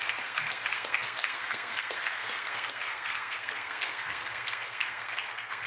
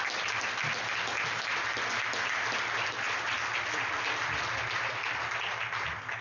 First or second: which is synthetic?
first